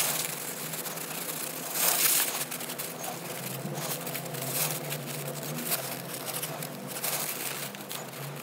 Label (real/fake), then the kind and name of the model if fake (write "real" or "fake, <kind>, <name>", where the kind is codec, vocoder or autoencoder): real